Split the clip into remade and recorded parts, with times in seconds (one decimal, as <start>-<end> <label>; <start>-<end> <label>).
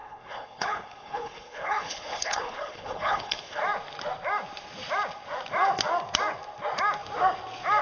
0.0-3.6 remade; 3.6-7.8 recorded